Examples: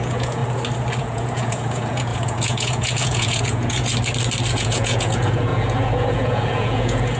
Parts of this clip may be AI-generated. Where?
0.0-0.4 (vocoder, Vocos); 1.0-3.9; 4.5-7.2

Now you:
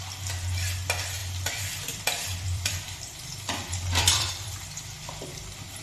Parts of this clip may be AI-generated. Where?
1.2-4.7 (vocoder, BigVGAN v2); 5.3-5.8

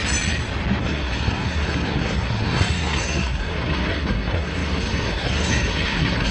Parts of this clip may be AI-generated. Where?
0.8-6.3 (codec, SNAC)

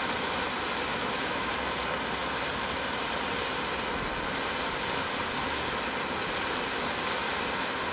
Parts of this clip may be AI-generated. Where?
0.9-1.5 (autoencoder, DAC-VAE)

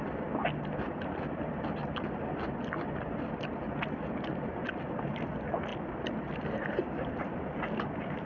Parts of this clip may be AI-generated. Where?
none

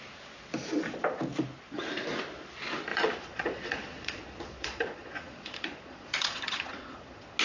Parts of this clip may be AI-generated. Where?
2.9-7.4 (vocoder, Vocos)

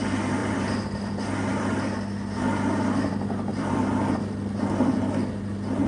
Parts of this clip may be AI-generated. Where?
0.4-1.1 (vocoder, BigVGAN v2); 3.5-4.9